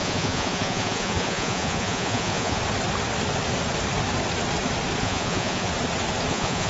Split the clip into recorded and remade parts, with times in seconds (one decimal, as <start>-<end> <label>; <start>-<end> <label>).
0.0-2.6 remade; 2.6-5.0 recorded; 5.0-5.7 remade; 5.7-6.3 recorded; 6.3-6.7 remade